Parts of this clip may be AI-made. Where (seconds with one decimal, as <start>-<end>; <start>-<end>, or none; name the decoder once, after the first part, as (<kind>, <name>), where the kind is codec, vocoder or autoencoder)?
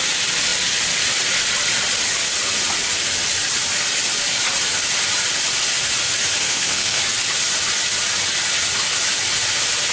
6.4-7.0 (codec, SNAC)